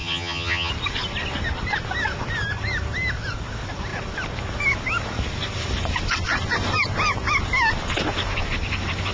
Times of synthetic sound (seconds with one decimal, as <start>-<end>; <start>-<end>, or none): 0.0-0.7